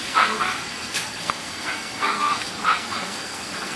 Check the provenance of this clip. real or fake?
fake